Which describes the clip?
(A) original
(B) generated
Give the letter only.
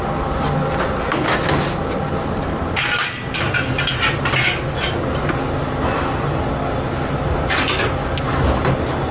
A